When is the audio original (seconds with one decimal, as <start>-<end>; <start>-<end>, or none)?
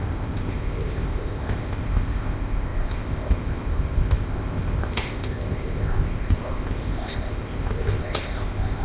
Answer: none